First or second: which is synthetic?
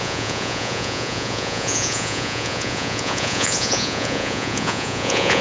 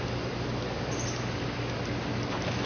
first